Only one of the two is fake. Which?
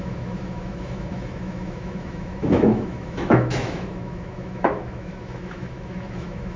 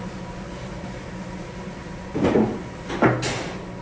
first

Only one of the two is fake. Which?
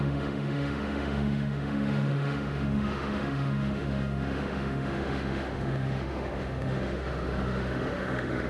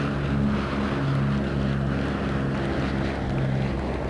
first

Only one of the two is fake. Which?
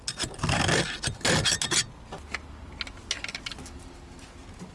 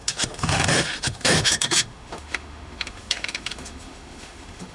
second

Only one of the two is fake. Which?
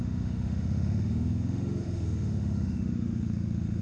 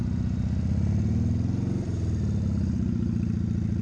first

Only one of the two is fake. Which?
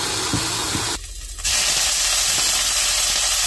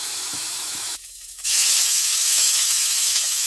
second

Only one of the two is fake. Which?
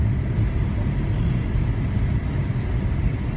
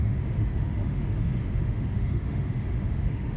second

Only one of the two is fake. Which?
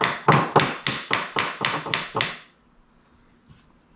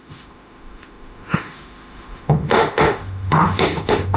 second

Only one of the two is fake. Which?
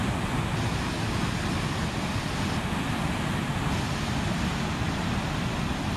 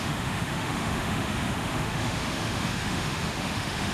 second